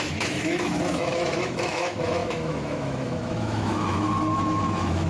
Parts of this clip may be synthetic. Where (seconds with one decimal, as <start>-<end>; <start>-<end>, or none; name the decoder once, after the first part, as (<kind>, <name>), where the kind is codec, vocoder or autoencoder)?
0.0-5.1 (autoencoder, DAC-VAE)

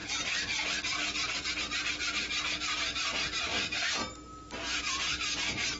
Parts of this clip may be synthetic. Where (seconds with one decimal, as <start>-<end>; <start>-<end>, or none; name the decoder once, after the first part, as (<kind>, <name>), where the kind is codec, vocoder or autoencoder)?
2.4-3.5 (vocoder, BigVGAN v2); 4.8-5.8

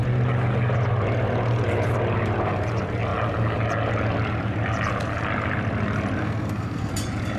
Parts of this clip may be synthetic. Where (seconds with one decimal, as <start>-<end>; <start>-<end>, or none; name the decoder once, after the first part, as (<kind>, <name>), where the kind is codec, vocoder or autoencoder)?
6.2-6.9 (codec, SNAC)

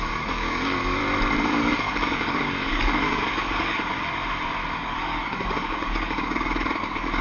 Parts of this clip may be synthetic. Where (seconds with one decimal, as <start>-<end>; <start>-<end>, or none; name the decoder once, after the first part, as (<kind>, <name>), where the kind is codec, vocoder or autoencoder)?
0.0-1.0 (codec, DAC); 1.5-4.2; 4.7-7.2